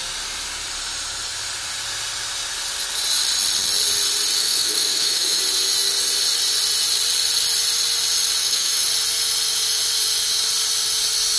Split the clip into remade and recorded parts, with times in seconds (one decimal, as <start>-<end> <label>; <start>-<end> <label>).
0.0-4.4 recorded; 4.4-5.4 remade; 5.4-8.4 recorded; 8.4-8.9 remade; 8.9-11.4 recorded